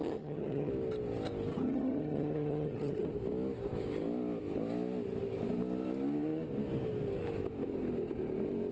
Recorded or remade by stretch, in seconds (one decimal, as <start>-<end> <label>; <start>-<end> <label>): 0.0-0.7 remade; 0.7-1.5 recorded; 1.5-3.1 remade; 3.1-8.7 recorded